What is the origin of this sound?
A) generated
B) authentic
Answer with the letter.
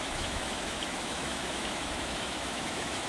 A